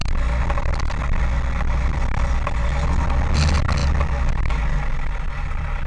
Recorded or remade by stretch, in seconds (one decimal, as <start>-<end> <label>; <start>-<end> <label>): 0.0-5.9 recorded